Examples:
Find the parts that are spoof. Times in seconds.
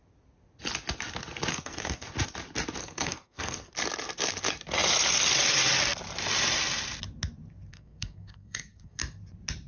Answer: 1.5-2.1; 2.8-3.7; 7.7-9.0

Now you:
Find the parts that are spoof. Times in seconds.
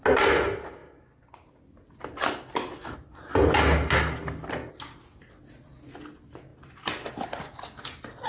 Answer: none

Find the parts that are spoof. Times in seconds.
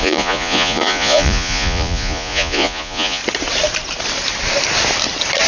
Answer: 0.0-3.2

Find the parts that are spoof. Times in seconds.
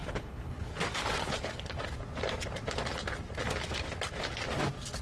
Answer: 0.0-0.7; 1.2-1.8